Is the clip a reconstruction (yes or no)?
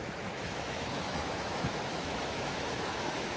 yes